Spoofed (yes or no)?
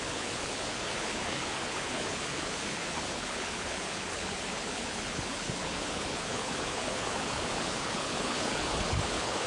yes